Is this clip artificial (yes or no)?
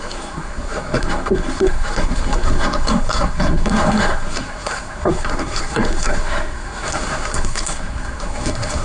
yes